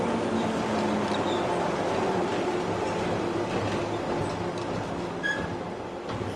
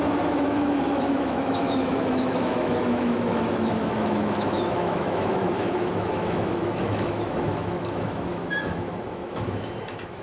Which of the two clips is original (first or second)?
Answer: first